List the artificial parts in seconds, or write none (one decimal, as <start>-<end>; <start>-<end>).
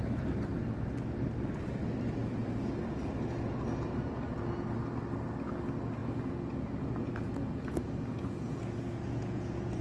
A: 6.0-9.8